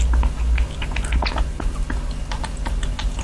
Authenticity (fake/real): real